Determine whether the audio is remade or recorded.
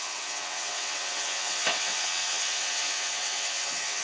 remade